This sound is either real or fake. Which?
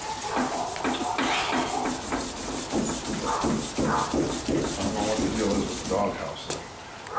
real